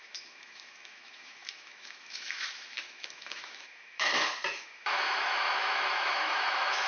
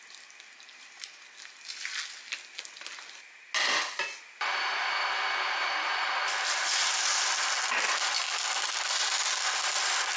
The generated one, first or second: first